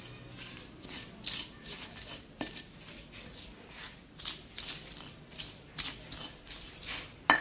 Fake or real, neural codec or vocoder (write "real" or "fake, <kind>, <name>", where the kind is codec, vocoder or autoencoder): real